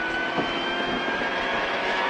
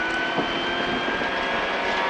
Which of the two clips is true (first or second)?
second